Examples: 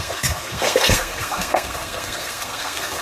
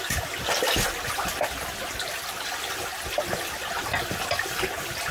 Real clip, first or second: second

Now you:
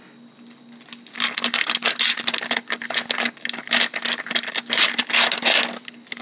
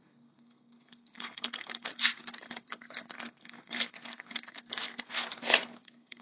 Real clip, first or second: first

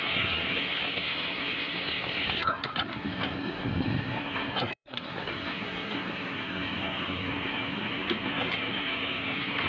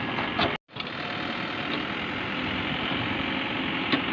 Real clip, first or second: second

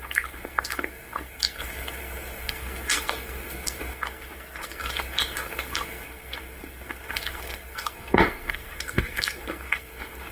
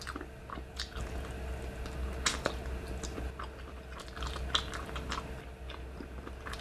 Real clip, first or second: second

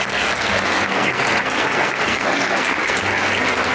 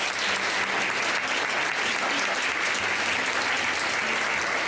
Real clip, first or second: second